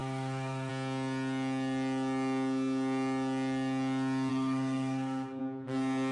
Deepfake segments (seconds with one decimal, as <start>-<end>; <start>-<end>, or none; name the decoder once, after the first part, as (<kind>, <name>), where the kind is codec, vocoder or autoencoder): 0.0-0.7 (codec, SNAC); 4.3-5.4